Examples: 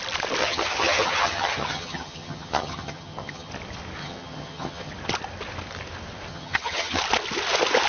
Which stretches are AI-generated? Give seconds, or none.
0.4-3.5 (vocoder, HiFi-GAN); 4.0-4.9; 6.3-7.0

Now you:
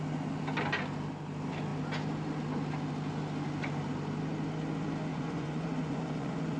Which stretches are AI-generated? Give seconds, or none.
5.1-6.6 (vocoder, Vocos)

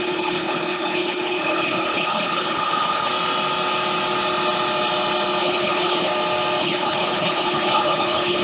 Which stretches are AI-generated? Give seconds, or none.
0.0-3.1 (codec, HILCodec); 5.4-6.1; 6.6-8.4

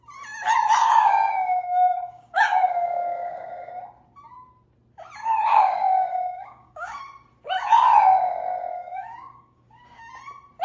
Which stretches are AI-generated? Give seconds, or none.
0.8-3.7 (codec, DAC); 5.5-7.0; 8.7-10.0

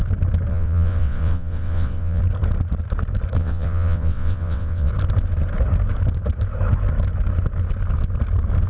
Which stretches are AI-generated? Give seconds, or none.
0.5-2.2 (vocoder, WaveNeXt); 3.4-4.9

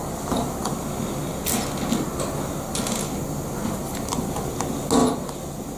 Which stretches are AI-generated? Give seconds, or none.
none

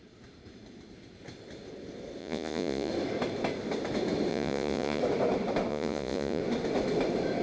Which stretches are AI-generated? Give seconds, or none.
2.2-2.9 (vocoder, Vocos); 4.3-5.0; 5.7-6.4

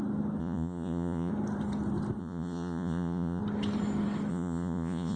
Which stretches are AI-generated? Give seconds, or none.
0.4-1.3 (vocoder, Vocos); 2.2-3.4; 4.3-5.2